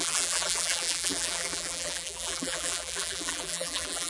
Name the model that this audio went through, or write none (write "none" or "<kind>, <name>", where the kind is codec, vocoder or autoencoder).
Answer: vocoder, BigVGAN v2